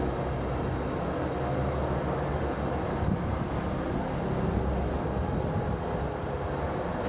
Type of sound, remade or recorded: recorded